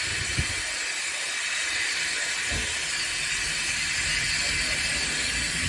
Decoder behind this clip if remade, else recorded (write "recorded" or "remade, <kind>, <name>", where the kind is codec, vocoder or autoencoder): recorded